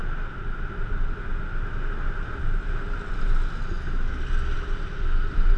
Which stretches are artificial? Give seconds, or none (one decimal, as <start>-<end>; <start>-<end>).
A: none